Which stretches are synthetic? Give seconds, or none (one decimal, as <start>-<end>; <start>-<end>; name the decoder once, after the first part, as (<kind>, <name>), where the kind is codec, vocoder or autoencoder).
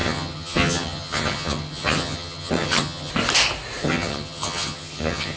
0.0-3.1 (vocoder, HiFi-GAN); 3.8-5.4